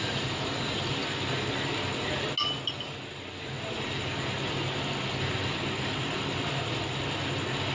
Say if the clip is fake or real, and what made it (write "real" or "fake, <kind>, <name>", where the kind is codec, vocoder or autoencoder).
real